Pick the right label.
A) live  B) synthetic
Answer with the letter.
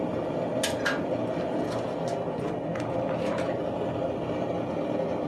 A